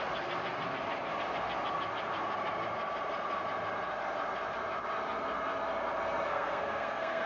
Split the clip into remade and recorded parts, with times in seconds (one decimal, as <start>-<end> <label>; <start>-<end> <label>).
0.0-6.3 recorded; 6.3-7.3 remade